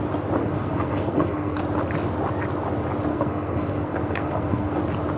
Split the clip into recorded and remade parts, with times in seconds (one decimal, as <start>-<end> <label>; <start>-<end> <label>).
0.0-0.4 recorded; 0.4-1.6 remade; 1.6-3.1 recorded; 3.1-4.8 remade; 4.8-5.2 recorded